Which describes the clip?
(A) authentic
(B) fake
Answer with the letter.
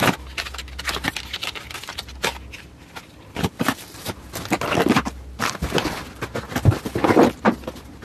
A